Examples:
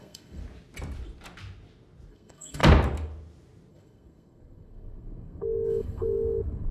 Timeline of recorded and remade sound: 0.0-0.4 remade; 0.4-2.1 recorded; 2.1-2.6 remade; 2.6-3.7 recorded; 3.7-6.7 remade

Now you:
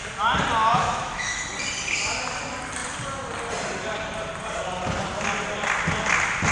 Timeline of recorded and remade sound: 0.0-0.7 recorded; 0.7-1.5 remade; 1.5-6.5 recorded